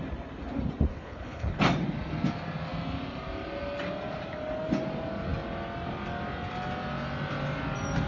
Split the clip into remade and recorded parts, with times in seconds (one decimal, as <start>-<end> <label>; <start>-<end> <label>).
0.0-0.9 recorded; 0.9-1.6 remade; 1.6-8.1 recorded